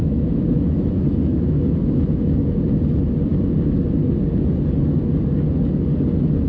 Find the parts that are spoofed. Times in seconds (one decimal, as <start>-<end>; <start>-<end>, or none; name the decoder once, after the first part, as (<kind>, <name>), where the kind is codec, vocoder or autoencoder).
0.0-2.6 (autoencoder, DAC-VAE)